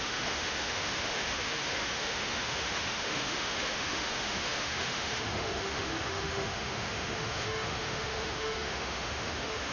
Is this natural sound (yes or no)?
no